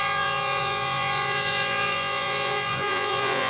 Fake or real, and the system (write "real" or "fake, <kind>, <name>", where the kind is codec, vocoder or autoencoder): fake, vocoder, Vocos